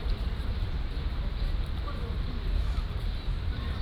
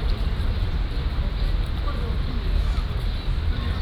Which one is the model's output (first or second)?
first